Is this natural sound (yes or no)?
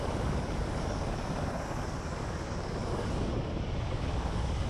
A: no